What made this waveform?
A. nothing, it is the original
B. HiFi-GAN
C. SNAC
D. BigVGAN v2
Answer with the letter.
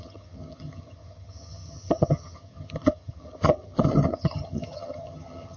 B